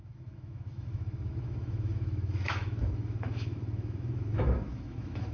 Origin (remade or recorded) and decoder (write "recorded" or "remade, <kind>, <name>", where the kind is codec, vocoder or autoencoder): remade, autoencoder, DAC-VAE